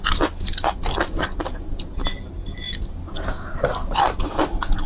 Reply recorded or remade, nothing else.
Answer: recorded